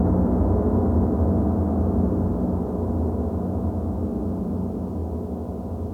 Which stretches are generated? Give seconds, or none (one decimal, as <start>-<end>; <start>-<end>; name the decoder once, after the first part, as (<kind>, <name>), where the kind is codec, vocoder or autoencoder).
none